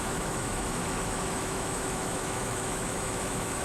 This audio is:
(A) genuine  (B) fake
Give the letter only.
B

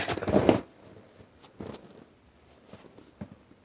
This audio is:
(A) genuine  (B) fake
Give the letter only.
A